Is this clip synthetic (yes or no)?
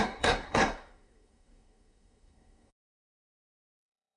yes